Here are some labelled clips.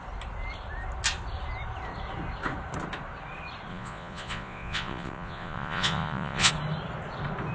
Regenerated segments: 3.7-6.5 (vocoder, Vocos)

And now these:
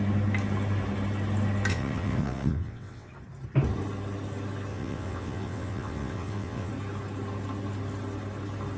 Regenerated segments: 1.7-3.1 (vocoder, WaveNeXt); 4.7-6.7

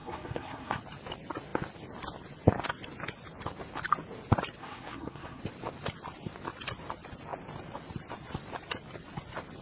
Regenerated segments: 0.0-0.8 (codec, SNAC); 4.6-5.4